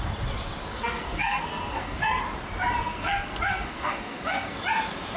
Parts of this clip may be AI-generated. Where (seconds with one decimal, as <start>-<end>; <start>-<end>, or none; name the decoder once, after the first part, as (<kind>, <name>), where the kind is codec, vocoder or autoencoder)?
0.7-2.2 (codec, SNAC); 2.9-4.6